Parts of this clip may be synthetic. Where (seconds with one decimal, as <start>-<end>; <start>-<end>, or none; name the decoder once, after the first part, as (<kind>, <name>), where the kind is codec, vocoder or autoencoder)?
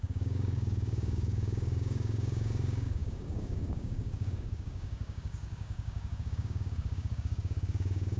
0.0-8.2 (codec, DAC)